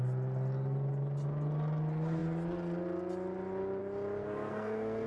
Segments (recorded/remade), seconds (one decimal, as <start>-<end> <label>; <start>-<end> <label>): 0.0-4.2 recorded; 4.2-5.1 remade